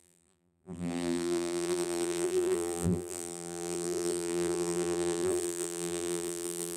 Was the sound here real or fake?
fake